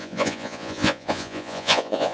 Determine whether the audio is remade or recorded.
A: remade